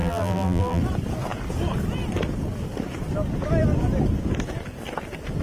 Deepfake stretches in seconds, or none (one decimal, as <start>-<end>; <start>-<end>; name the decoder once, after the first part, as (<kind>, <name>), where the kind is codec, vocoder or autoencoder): 0.0-0.8 (vocoder, BigVGAN v2)